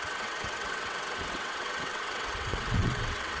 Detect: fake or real fake